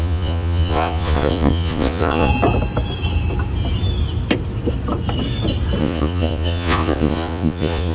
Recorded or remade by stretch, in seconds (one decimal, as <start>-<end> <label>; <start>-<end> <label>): 0.0-2.3 remade; 2.3-5.8 recorded; 5.8-7.9 remade